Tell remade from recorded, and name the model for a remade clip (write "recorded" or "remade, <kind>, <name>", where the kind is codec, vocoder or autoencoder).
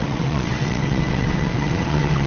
remade, vocoder, WaveNeXt